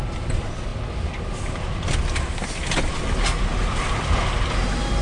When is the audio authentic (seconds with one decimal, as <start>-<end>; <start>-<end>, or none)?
0.0-5.0